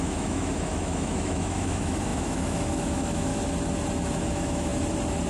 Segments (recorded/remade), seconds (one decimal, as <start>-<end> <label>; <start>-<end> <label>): 0.0-3.3 remade; 3.3-4.3 recorded; 4.3-4.7 remade; 4.7-5.3 recorded